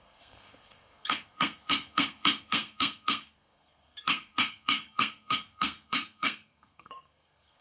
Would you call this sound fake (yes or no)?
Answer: yes